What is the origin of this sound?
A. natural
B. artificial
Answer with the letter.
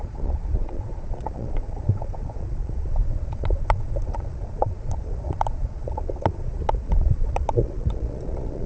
B